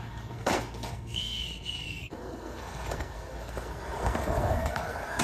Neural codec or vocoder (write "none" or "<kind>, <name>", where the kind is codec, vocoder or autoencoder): codec, SNAC